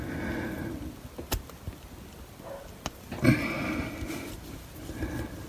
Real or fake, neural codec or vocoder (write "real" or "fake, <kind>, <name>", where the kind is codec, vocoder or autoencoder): real